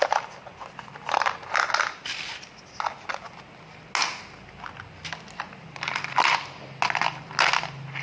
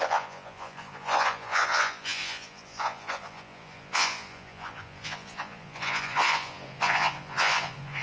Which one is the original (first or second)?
first